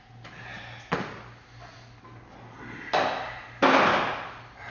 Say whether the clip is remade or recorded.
recorded